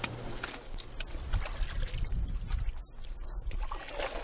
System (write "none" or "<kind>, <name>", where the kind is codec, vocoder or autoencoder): none